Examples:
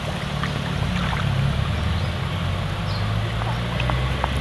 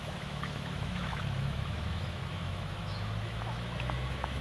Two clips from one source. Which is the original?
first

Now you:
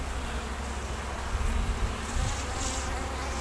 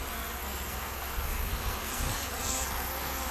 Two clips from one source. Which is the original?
first